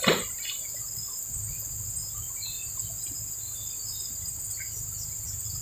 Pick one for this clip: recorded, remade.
recorded